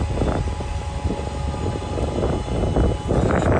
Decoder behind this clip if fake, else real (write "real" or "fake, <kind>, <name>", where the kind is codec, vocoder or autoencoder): real